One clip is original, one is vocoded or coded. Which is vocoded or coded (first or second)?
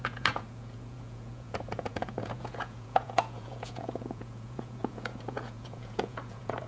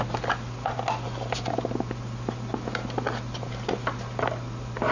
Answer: first